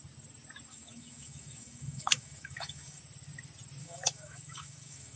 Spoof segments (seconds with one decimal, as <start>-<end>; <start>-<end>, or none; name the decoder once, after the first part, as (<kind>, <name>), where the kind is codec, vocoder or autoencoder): 0.7-3.0 (autoencoder, DAC-VAE); 3.8-5.2